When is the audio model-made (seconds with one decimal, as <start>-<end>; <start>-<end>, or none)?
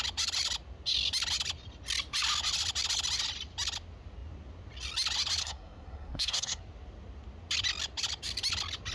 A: 5.4-6.6